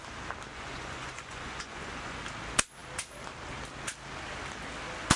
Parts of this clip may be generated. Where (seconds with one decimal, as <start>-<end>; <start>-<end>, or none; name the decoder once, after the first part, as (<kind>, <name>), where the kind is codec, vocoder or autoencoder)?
0.5-2.2 (vocoder, Vocos)